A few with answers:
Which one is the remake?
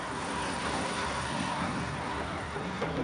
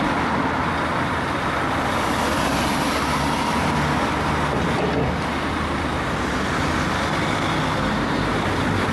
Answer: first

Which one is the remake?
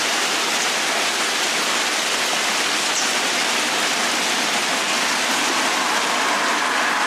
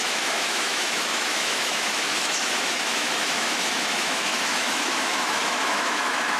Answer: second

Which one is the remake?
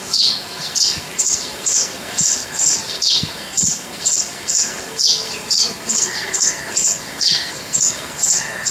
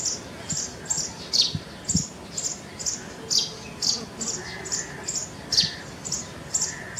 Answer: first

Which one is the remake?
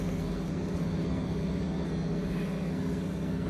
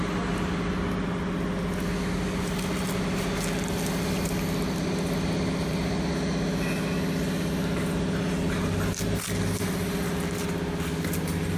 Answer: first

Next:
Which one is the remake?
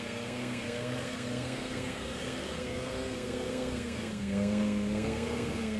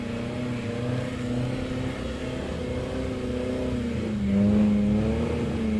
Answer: first